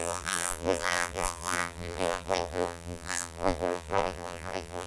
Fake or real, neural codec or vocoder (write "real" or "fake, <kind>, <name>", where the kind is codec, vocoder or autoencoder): fake, vocoder, BigVGAN v2